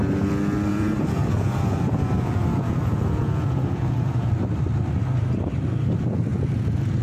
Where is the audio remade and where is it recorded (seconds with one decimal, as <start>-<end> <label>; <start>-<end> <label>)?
0.0-0.7 recorded; 0.7-4.3 remade; 4.3-6.3 recorded; 6.3-7.0 remade